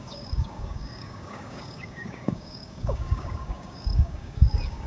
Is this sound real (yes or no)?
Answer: no